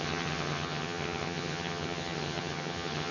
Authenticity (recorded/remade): remade